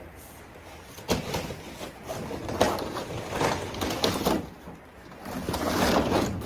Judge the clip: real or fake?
real